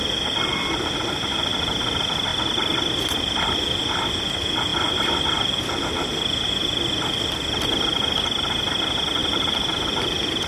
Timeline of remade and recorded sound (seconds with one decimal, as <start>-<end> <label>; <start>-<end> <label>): 0.0-9.2 recorded; 9.2-10.0 remade; 10.0-10.5 recorded